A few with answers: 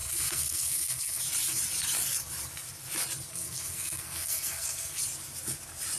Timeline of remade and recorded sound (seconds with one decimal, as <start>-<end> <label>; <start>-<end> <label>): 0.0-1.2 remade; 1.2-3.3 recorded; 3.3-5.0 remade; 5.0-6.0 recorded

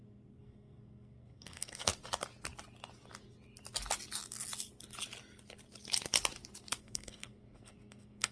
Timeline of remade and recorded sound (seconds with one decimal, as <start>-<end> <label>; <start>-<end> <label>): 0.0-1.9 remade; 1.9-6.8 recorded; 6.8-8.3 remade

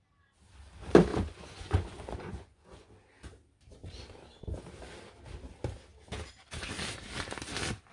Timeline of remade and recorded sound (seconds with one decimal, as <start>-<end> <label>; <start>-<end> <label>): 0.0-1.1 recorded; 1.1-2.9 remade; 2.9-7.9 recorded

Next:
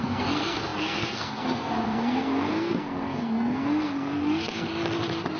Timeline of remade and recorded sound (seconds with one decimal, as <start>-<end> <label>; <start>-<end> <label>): 0.0-4.7 remade; 4.7-5.4 recorded

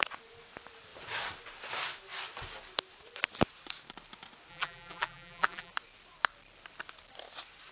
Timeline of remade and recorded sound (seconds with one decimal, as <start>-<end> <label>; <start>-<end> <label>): 0.0-4.5 recorded; 4.5-5.7 remade; 5.7-7.7 recorded

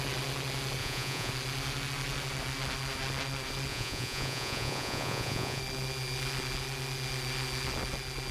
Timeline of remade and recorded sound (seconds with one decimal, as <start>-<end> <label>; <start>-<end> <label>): 0.0-0.8 recorded; 0.8-1.3 remade; 1.3-3.7 recorded; 3.7-5.6 remade; 5.6-8.3 recorded

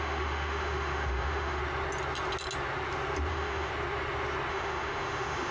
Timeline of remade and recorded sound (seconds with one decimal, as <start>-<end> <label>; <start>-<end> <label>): 0.0-1.6 remade; 1.6-3.3 recorded; 3.3-3.7 remade; 3.7-4.5 recorded; 4.5-5.5 remade

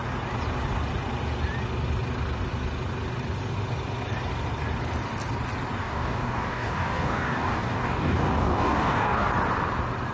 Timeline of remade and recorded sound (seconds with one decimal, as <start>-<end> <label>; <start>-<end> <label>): 0.0-5.8 recorded; 5.8-9.3 remade; 9.3-10.1 recorded